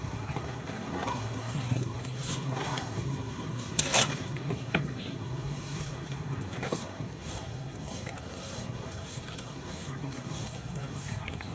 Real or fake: fake